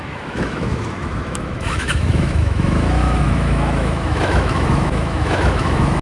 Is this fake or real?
fake